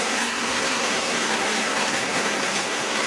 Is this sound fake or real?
fake